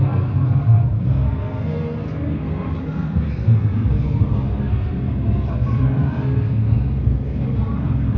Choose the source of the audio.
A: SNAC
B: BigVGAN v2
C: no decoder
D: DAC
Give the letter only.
A